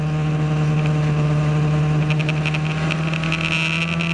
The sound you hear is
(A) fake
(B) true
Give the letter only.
B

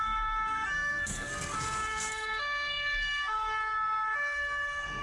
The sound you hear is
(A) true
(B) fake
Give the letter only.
B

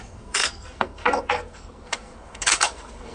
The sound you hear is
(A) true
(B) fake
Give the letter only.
B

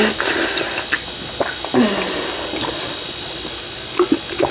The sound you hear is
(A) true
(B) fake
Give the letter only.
A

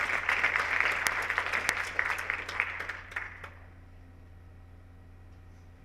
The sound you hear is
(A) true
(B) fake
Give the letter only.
A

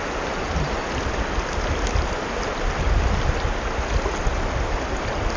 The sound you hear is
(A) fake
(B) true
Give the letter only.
B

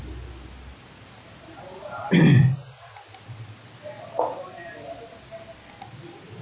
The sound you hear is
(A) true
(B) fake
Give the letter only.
A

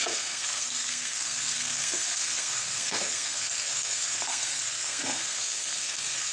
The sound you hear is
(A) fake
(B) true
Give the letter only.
A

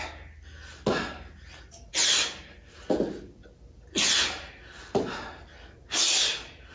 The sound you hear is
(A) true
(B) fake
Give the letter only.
A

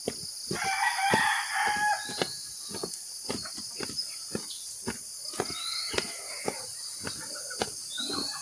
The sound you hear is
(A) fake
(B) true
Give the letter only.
B